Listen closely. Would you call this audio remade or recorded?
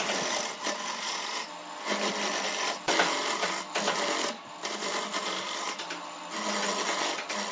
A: recorded